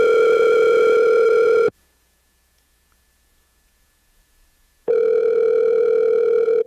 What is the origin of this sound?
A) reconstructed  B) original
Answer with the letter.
A